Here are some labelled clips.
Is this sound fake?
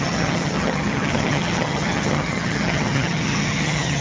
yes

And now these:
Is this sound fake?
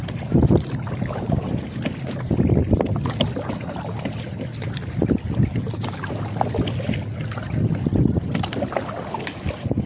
no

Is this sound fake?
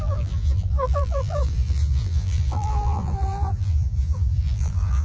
yes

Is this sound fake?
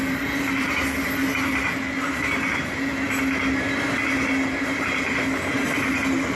no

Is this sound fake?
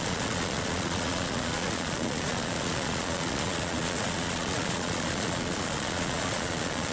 yes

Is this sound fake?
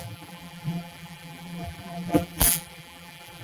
yes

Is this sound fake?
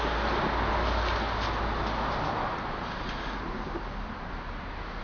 no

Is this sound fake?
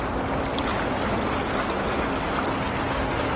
no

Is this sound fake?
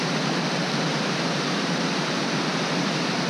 no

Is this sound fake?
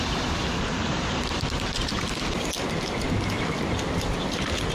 no